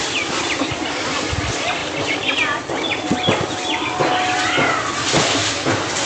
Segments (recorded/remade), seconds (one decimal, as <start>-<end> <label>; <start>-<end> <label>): 0.0-6.1 recorded